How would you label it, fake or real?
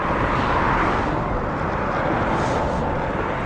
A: real